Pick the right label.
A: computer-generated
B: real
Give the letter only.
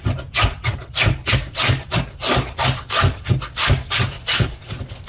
B